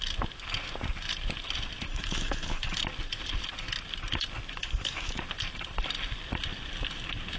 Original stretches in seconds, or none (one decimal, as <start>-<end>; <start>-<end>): 0.0-1.9; 2.8-4.6; 5.2-7.4